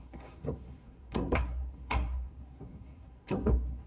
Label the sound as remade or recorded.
remade